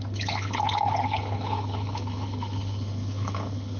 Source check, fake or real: fake